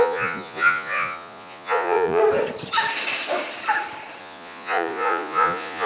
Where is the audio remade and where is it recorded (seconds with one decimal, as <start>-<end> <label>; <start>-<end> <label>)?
0.0-2.2 remade; 2.2-4.2 recorded; 4.2-5.9 remade